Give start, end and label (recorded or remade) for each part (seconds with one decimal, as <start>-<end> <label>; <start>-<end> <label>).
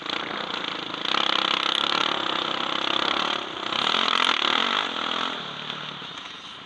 0.0-6.7 recorded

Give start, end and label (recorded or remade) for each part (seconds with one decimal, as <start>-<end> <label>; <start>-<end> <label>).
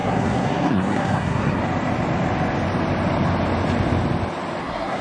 0.0-1.6 remade; 1.6-4.6 recorded; 4.6-5.0 remade